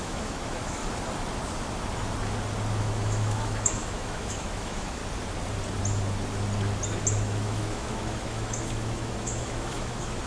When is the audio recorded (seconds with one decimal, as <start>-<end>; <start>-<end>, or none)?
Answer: 0.8-2.8; 5.0-7.1